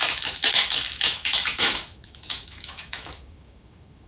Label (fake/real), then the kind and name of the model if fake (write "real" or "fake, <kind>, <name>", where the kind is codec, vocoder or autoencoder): fake, autoencoder, DAC-VAE